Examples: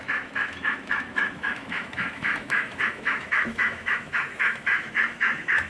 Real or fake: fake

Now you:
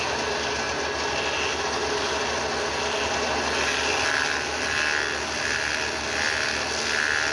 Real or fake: real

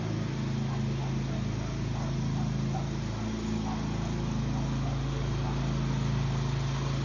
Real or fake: real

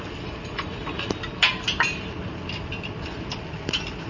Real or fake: real